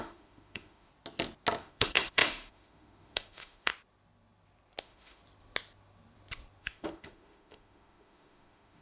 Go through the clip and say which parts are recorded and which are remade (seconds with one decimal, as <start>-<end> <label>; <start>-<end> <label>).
0.0-0.9 remade; 0.9-1.6 recorded; 1.6-3.7 remade; 3.7-4.8 recorded; 4.8-5.2 remade; 5.2-6.6 recorded; 6.6-8.8 remade